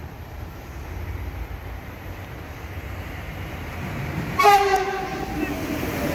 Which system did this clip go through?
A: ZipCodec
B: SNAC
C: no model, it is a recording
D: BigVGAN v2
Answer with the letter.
D